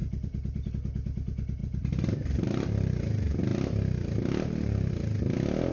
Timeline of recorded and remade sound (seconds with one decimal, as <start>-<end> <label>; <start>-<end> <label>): 0.0-0.7 remade; 0.7-1.6 recorded; 1.6-3.0 remade; 3.0-5.7 recorded